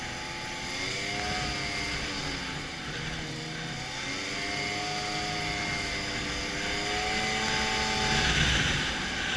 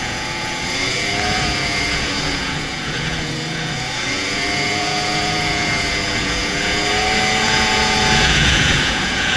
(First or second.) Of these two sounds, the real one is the first